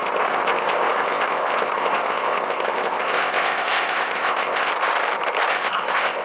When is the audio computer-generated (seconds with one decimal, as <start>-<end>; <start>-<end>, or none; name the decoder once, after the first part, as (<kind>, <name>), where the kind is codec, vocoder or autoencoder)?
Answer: 0.0-4.7 (codec, ZipCodec); 5.5-6.2